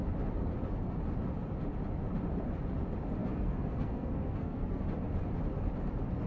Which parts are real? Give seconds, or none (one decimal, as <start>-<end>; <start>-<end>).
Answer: 0.0-3.2; 4.8-6.3